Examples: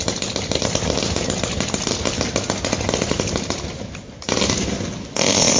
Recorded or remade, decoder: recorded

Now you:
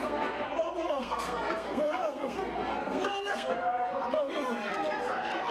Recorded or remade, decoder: remade, codec, SNAC